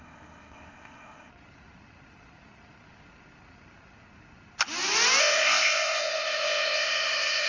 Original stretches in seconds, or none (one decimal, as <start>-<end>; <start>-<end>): 1.3-5.2